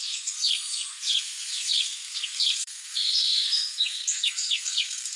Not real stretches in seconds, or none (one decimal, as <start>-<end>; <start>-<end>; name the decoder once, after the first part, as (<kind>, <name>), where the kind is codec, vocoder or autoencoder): 0.0-5.2 (codec, SNAC)